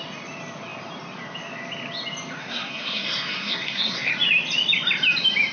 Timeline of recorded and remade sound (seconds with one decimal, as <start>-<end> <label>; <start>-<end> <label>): 0.0-2.4 recorded; 2.4-4.1 remade; 4.1-5.5 recorded